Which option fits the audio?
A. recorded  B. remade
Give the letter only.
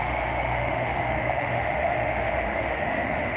B